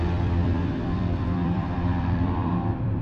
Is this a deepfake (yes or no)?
yes